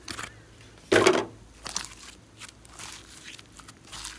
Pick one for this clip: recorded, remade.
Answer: recorded